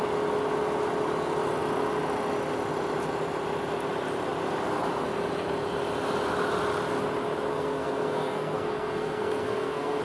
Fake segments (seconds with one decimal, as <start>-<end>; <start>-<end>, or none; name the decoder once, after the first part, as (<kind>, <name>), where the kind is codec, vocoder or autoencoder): 7.5-10.0 (codec, SNAC)